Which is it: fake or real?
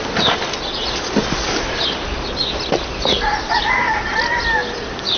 real